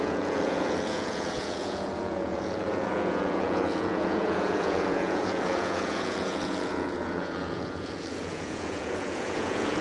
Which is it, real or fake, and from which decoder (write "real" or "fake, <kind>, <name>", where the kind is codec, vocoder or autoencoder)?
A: fake, vocoder, Vocos